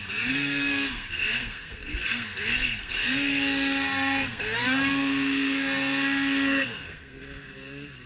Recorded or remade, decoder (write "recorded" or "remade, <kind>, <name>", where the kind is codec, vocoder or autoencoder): remade, codec, SNAC